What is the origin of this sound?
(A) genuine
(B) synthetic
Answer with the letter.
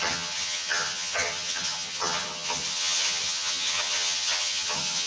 B